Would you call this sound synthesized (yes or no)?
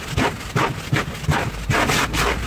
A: no